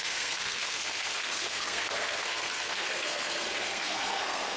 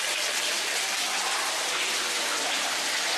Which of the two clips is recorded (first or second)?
second